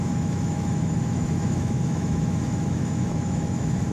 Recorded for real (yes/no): no